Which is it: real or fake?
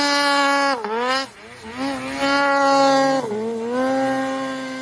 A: real